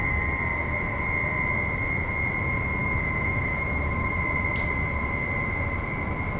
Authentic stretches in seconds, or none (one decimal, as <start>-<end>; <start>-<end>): 0.0-2.8; 4.1-6.4